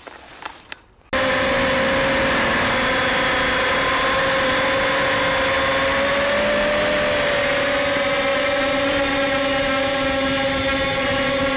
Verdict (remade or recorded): recorded